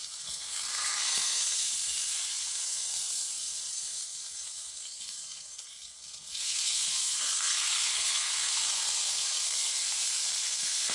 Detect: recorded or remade remade